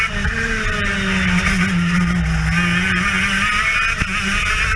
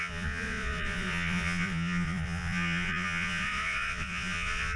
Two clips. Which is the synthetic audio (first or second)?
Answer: second